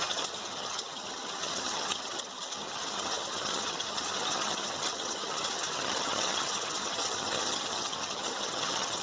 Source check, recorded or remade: remade